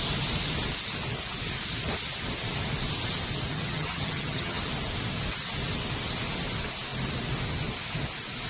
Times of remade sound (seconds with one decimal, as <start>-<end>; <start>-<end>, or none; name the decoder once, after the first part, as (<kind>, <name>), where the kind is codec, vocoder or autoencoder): 3.5-4.6 (vocoder, HiFi-GAN)